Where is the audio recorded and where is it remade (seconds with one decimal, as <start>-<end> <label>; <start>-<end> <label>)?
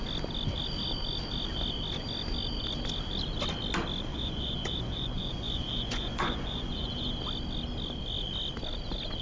0.0-4.1 recorded; 4.1-7.1 remade; 7.1-9.2 recorded